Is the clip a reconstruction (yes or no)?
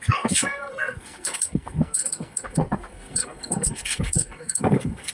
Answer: yes